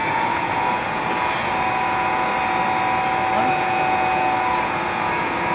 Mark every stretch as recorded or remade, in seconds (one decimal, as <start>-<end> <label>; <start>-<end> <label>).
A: 0.0-2.3 remade; 2.3-3.5 recorded; 3.5-5.5 remade